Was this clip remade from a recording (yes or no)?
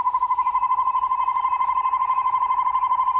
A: no